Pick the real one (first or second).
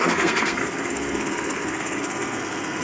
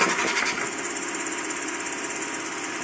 second